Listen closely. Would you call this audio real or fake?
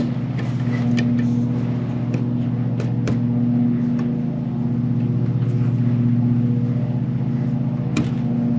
real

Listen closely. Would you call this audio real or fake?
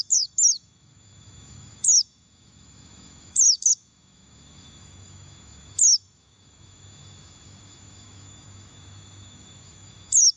fake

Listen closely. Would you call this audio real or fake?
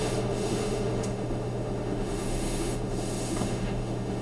fake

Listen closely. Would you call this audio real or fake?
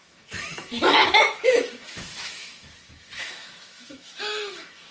fake